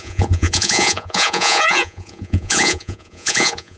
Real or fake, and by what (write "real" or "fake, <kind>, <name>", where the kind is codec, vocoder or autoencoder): fake, vocoder, Vocos